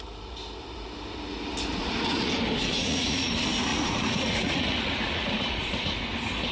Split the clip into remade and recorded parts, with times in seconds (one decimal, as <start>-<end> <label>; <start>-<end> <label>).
0.0-1.8 recorded; 1.8-2.3 remade; 2.3-2.7 recorded; 2.7-3.3 remade; 3.3-3.7 recorded; 3.7-6.0 remade; 6.0-6.5 recorded